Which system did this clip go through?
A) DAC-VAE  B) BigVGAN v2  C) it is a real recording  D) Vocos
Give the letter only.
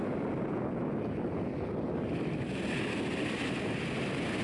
C